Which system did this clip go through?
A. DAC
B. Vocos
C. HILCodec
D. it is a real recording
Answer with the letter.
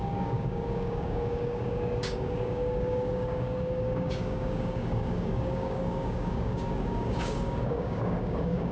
A